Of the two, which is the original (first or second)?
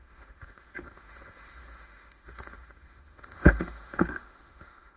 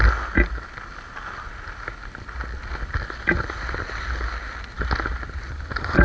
second